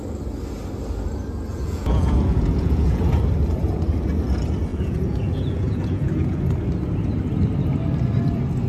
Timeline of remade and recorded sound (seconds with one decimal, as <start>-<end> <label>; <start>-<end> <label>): 0.0-1.5 recorded; 1.5-3.2 remade; 3.2-4.7 recorded; 4.7-6.4 remade; 6.4-8.7 recorded